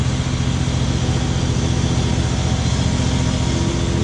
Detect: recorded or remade recorded